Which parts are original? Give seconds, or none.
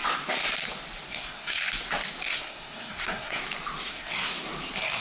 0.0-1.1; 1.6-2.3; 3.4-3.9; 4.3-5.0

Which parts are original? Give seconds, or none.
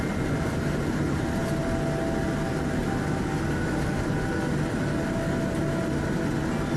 0.0-6.8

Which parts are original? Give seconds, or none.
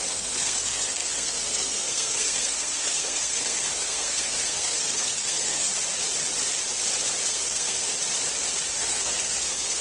5.7-7.3; 7.9-8.8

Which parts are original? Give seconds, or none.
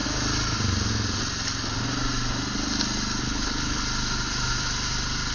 0.0-3.2; 3.8-5.3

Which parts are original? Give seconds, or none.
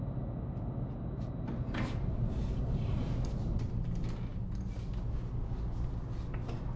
0.0-6.8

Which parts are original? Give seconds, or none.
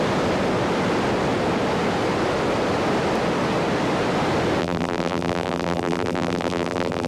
0.0-4.6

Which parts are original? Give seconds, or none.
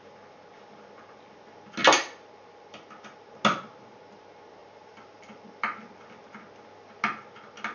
0.0-4.6; 6.4-7.7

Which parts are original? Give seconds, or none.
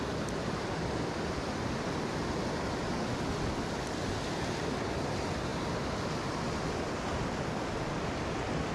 0.0-8.7